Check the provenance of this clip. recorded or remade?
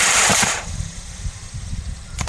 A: remade